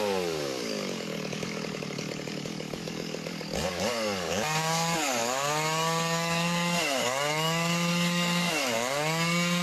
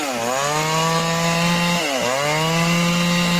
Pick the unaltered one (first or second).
second